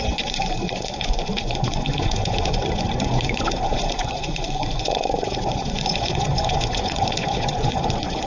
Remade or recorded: remade